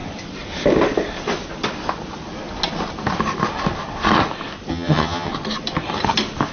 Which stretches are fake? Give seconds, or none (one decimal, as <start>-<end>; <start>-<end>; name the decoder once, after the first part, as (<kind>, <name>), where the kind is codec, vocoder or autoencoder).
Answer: 4.7-5.3 (vocoder, HiFi-GAN)